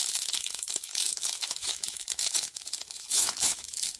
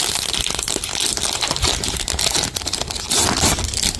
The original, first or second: second